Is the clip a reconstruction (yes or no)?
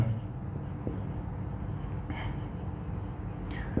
no